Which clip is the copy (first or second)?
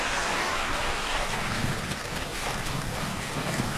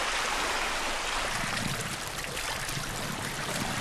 first